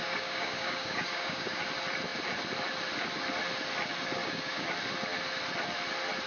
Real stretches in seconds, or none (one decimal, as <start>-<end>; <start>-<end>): 1.6-4.2; 4.7-6.3